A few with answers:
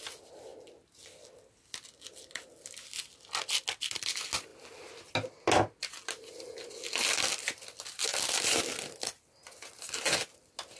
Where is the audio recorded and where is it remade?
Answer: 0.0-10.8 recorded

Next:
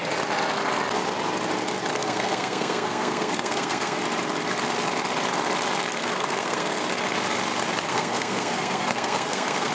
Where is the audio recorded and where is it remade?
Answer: 0.0-1.9 recorded; 1.9-4.0 remade; 4.0-6.0 recorded; 6.0-6.8 remade; 6.8-7.9 recorded; 7.9-9.7 remade

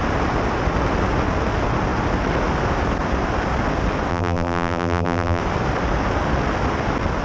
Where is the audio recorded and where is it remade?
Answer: 0.0-4.1 recorded; 4.1-5.4 remade; 5.4-7.2 recorded

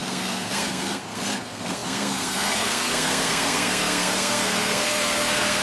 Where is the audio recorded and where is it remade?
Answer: 0.0-5.6 remade